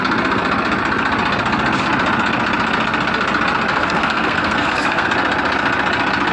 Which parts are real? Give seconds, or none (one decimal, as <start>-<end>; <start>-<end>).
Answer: 0.0-3.7; 5.1-6.3